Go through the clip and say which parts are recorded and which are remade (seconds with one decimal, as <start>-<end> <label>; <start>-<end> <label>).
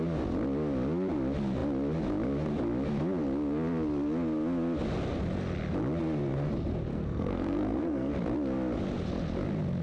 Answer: 0.0-6.9 recorded; 6.9-8.1 remade; 8.1-9.8 recorded